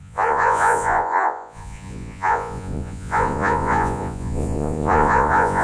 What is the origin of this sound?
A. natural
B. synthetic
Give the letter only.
B